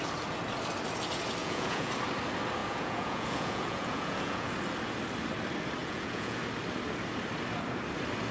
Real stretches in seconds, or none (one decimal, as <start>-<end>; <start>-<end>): 0.0-1.4; 1.9-2.6; 4.5-5.8; 6.4-8.3

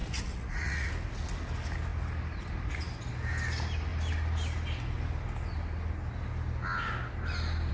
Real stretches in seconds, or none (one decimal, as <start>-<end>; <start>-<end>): 0.9-7.7